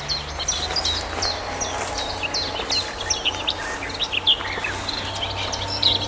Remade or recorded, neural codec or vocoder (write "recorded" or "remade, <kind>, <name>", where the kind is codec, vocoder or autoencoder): recorded